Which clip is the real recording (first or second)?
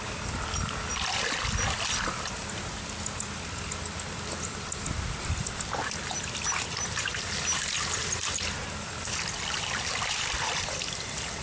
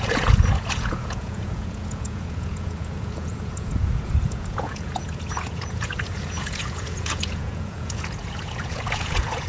first